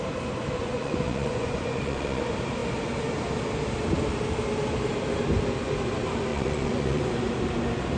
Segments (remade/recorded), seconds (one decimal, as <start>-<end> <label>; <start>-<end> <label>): 0.0-0.6 recorded; 0.6-2.2 remade; 2.2-6.3 recorded; 6.3-7.1 remade; 7.1-8.0 recorded